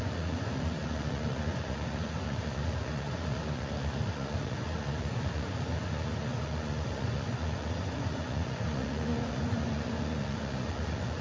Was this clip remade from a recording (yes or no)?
yes